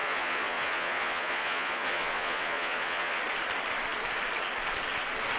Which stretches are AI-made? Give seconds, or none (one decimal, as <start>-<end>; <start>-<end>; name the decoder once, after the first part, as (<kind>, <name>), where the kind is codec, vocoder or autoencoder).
0.0-3.2 (vocoder, Vocos)